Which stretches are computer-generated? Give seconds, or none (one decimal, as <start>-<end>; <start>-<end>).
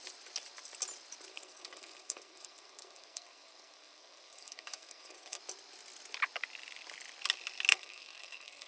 1.3-5.4; 7.7-8.7